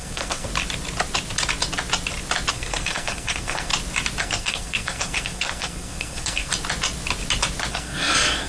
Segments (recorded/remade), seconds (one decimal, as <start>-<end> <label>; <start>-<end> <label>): 0.0-0.5 remade; 0.5-2.5 recorded; 2.5-3.7 remade; 3.7-4.2 recorded; 4.2-6.5 remade; 6.5-7.7 recorded; 7.7-8.5 remade